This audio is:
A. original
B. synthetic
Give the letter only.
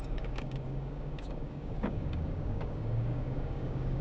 B